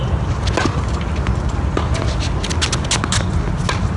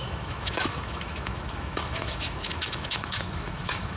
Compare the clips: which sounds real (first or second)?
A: first